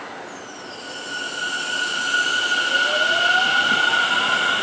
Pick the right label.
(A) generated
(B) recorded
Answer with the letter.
B